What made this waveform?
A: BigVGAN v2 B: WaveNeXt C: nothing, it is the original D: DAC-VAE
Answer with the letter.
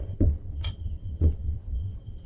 B